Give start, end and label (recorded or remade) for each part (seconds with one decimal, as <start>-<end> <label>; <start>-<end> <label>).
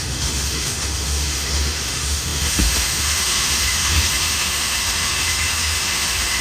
0.0-6.4 remade